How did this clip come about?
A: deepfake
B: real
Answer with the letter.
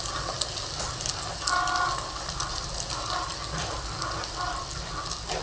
B